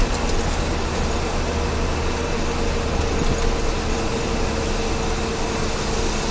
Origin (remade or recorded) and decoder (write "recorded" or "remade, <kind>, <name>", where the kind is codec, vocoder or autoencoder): recorded